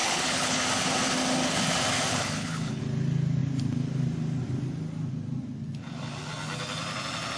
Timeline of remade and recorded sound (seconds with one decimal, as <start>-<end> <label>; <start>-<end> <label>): 0.0-0.6 remade; 0.6-2.1 recorded; 2.1-2.8 remade; 2.8-7.4 recorded